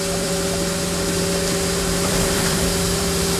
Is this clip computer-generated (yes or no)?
yes